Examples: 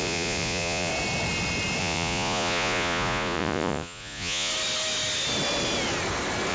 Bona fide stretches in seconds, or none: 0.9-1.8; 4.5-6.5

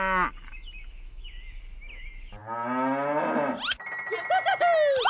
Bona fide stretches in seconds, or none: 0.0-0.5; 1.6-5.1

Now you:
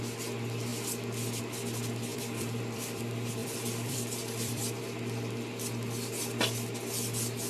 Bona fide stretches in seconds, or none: 0.0-2.1; 3.0-3.4; 4.8-7.5